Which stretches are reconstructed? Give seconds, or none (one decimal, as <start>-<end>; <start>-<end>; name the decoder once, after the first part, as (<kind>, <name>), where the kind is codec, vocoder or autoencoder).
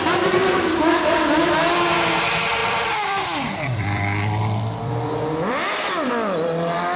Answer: 0.4-1.5 (vocoder, BigVGAN v2); 2.6-7.0